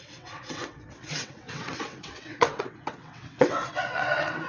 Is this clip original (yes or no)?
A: no